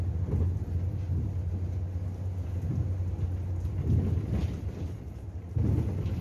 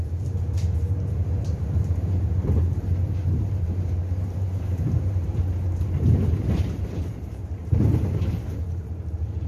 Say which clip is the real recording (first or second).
first